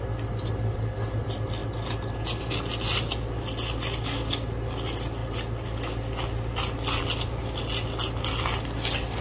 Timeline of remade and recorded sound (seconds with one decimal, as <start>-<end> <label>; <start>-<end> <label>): 0.0-9.2 recorded